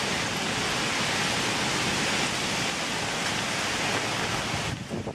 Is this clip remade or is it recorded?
recorded